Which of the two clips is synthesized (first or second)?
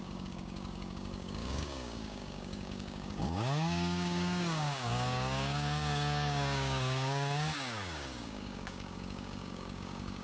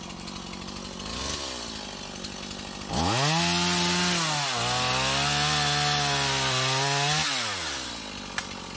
first